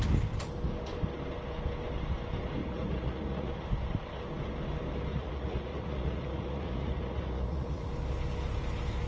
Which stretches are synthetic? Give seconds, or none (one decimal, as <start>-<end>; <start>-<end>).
2.6-3.5; 5.1-7.9